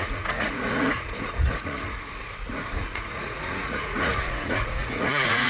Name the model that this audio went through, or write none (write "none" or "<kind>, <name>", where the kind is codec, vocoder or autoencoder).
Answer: vocoder, Vocos